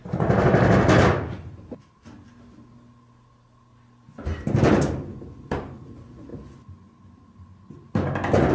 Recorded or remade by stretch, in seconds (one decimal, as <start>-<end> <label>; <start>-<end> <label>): 0.0-8.5 recorded